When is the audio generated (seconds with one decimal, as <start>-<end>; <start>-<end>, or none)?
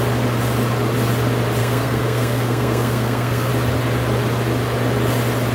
1.6-3.5